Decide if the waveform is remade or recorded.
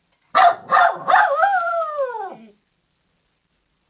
recorded